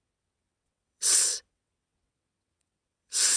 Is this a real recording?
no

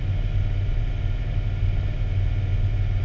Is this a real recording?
yes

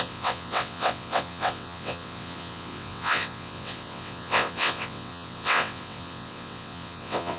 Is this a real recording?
no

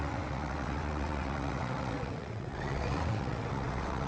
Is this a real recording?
no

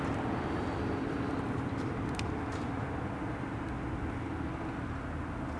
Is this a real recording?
yes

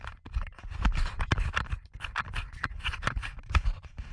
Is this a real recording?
yes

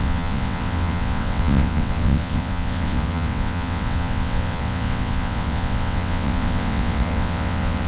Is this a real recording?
no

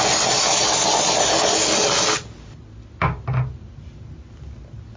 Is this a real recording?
yes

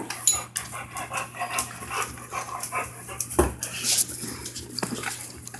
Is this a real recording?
yes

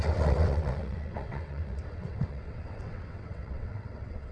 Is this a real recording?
no